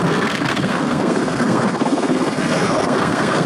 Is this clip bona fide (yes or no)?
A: no